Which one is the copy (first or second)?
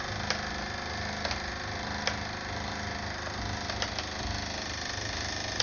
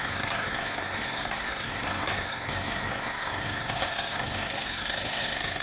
second